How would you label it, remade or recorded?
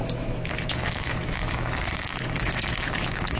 remade